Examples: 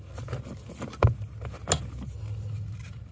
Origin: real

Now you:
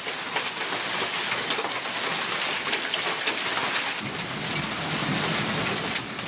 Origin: real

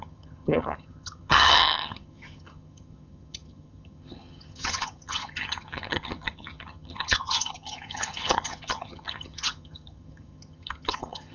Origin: fake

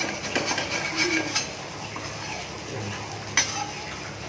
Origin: real